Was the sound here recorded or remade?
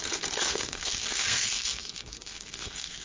remade